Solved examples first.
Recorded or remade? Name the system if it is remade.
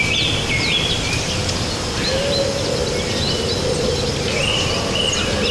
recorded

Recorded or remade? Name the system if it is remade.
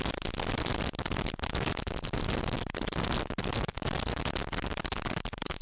recorded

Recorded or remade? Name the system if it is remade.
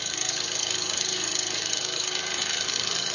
remade, codec, SNAC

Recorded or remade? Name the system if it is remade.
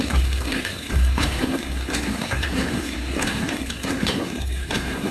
remade, codec, SNAC